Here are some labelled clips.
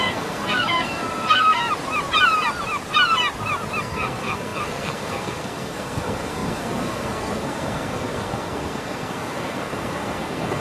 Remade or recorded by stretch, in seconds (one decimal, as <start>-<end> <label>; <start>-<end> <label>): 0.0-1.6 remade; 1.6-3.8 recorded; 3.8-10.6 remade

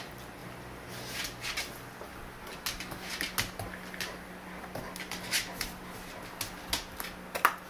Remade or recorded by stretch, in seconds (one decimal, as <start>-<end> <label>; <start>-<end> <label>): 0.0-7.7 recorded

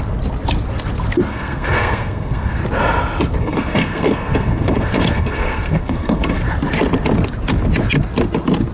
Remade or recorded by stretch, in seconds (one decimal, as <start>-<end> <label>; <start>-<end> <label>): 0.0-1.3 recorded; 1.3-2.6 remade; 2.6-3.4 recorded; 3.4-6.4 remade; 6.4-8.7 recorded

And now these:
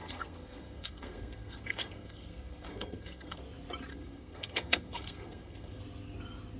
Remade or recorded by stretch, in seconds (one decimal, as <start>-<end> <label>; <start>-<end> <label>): 0.0-3.4 remade; 3.4-3.9 recorded; 3.9-5.8 remade; 5.8-6.6 recorded

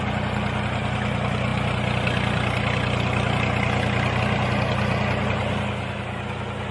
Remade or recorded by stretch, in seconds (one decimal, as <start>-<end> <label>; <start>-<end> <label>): 0.0-6.7 recorded